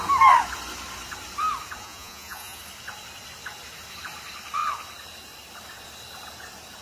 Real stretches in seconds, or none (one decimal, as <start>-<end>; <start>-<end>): 0.0-1.8; 2.6-6.8